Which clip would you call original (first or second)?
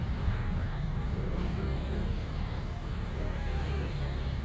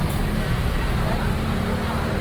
second